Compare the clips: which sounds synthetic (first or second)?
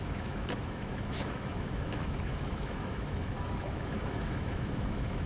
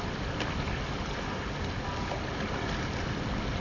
first